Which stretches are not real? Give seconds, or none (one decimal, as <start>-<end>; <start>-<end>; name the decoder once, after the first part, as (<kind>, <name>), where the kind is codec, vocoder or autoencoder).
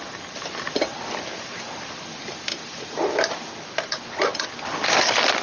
none